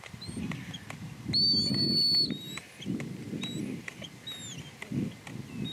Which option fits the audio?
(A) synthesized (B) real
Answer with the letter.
B